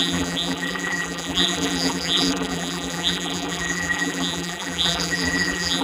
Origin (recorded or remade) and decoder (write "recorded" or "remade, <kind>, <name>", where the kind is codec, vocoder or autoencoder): remade, vocoder, BigVGAN v2